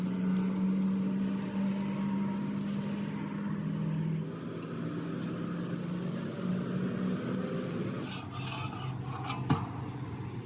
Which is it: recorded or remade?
recorded